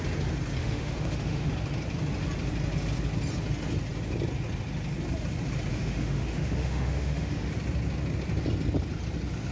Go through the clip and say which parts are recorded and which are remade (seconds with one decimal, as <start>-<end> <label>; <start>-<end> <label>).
0.0-0.6 recorded; 0.6-1.5 remade; 1.5-5.7 recorded; 5.7-7.5 remade; 7.5-9.5 recorded